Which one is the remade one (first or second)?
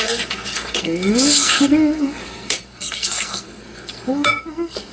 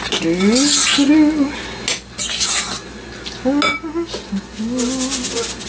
first